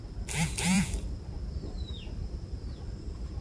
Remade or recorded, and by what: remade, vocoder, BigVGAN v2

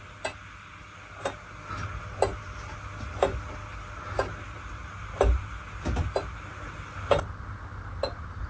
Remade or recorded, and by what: recorded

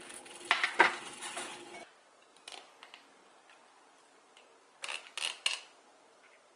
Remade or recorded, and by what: recorded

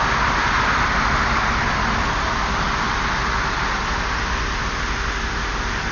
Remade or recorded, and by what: recorded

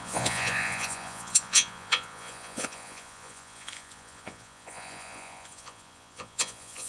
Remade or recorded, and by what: remade, vocoder, Vocos